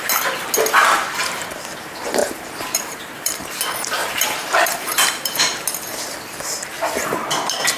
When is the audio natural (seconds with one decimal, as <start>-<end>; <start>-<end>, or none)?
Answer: 0.0-2.2; 3.5-4.0; 5.4-7.0